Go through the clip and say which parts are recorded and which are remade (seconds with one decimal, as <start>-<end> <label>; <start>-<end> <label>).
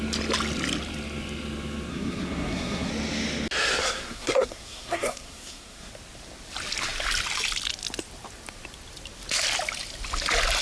0.0-1.9 recorded; 1.9-2.9 remade; 2.9-3.8 recorded; 3.8-5.9 remade; 5.9-10.6 recorded